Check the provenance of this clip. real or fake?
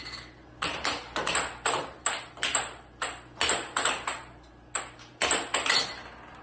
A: real